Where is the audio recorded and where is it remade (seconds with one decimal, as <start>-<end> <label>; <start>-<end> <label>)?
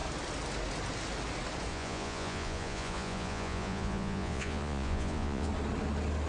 0.0-1.7 recorded; 1.7-5.5 remade; 5.5-6.3 recorded